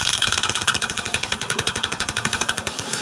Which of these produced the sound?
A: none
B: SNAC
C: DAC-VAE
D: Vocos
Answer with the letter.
B